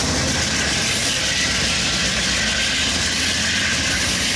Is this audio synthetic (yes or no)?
no